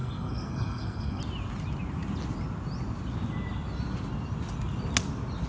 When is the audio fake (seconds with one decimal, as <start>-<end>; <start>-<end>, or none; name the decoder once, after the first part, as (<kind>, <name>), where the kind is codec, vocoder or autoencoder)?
0.0-1.2 (codec, SNAC)